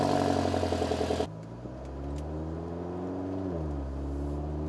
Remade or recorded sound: recorded